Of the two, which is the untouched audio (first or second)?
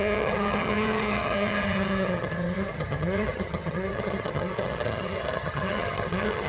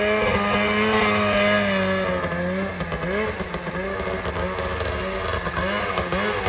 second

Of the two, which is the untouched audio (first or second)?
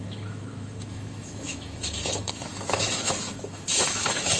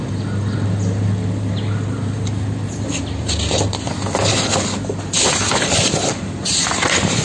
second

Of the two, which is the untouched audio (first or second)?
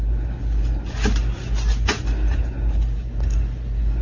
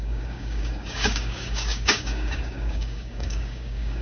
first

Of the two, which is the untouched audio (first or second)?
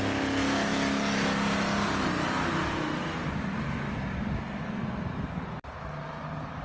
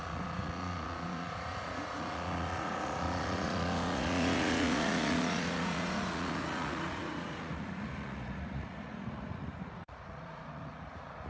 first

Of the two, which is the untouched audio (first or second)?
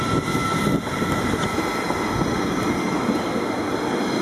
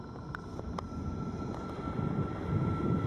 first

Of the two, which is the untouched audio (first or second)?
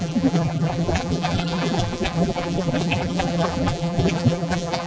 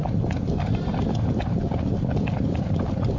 second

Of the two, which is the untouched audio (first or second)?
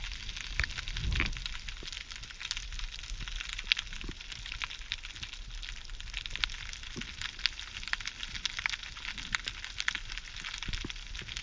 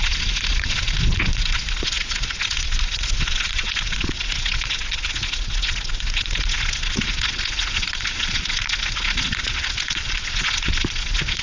first